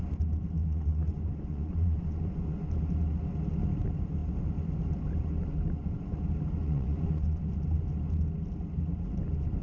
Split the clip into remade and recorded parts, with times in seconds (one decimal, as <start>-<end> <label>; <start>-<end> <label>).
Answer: 0.0-0.6 recorded; 0.6-2.7 remade; 2.7-6.6 recorded; 6.6-7.4 remade; 7.4-9.6 recorded